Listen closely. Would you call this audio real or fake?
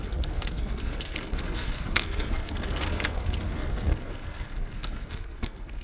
fake